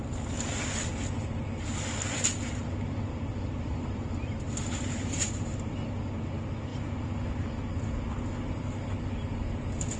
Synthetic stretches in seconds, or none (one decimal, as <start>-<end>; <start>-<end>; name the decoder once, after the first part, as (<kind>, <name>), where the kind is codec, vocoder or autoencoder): 3.3-5.8 (vocoder, BigVGAN v2)